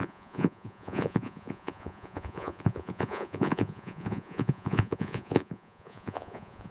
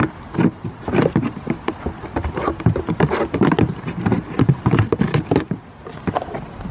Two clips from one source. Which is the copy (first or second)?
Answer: first